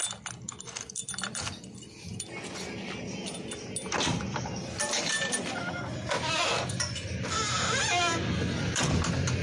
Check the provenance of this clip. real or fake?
real